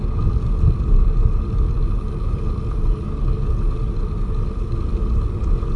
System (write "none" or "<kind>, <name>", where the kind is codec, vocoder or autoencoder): none